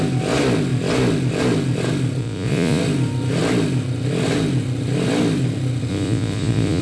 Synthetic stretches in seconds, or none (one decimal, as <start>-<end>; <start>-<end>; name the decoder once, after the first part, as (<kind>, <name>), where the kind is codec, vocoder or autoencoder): 2.2-2.8 (vocoder, Vocos); 5.9-6.8